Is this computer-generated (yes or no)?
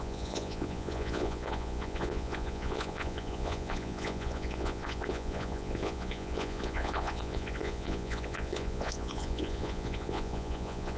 yes